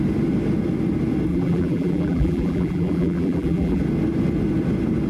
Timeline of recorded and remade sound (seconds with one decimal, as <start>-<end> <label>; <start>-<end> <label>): 0.0-1.3 recorded; 1.3-3.8 remade; 3.8-5.1 recorded